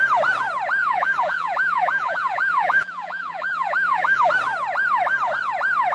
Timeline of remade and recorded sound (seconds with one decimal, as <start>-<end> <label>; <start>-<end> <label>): 0.0-0.8 recorded; 0.8-4.3 remade; 4.3-5.9 recorded